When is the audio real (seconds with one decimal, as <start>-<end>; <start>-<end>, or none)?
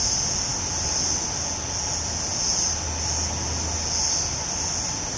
0.0-5.2